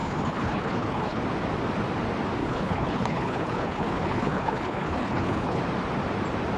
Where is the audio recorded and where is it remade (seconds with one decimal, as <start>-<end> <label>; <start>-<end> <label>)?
0.0-1.2 remade; 1.2-2.4 recorded; 2.4-5.6 remade; 5.6-6.6 recorded